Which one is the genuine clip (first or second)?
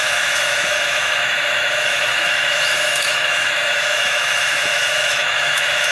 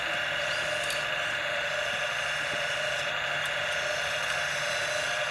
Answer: second